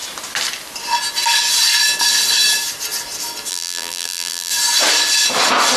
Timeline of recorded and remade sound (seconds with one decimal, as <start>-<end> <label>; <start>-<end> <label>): 0.0-3.5 recorded; 3.5-4.5 remade; 4.5-5.8 recorded